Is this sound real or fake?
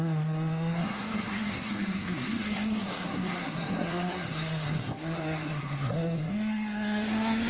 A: fake